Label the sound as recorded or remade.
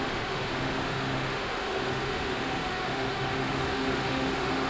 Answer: remade